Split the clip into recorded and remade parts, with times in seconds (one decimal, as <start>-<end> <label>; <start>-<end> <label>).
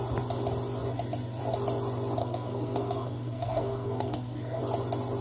0.0-2.2 recorded; 2.2-4.6 remade; 4.6-5.2 recorded